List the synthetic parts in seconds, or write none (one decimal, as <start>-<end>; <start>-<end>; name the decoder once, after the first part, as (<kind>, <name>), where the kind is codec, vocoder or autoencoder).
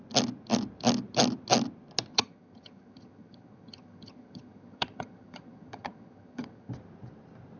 2.1-6.7 (vocoder, HiFi-GAN)